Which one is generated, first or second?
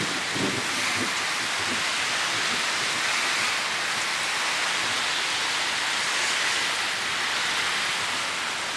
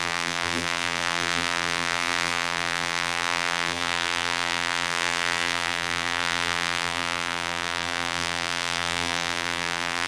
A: second